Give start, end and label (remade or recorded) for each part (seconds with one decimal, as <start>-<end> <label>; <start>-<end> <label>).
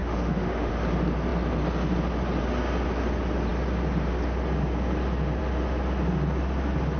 0.0-0.7 remade; 0.7-7.0 recorded